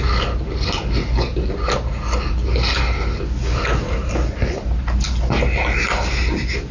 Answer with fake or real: real